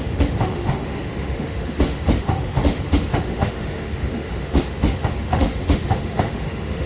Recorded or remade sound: remade